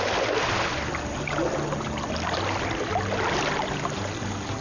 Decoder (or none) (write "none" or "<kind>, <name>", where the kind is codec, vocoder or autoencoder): none